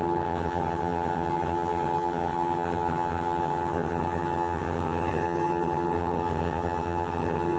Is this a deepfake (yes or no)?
yes